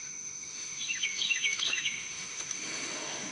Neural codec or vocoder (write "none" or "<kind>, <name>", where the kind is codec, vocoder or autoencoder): autoencoder, DAC-VAE